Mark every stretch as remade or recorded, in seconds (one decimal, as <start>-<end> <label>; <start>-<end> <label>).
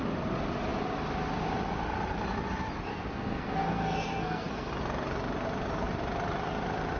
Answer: 0.0-2.9 recorded; 2.9-4.7 remade; 4.7-7.0 recorded